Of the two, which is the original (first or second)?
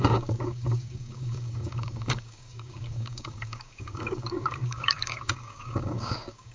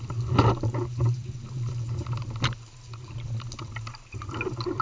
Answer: second